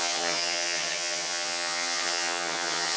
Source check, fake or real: fake